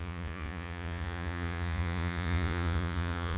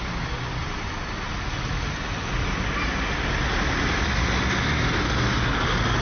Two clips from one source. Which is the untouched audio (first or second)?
second